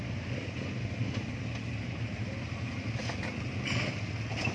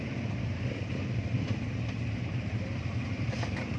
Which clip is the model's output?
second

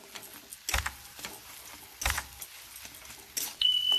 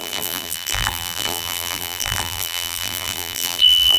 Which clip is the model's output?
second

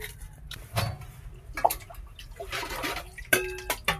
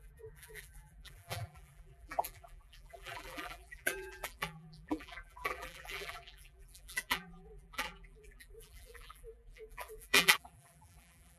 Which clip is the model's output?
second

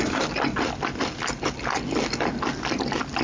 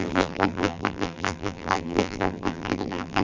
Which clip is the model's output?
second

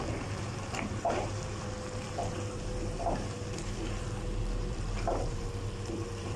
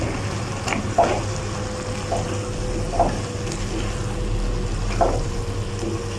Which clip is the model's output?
first